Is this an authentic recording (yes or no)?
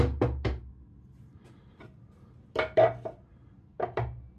yes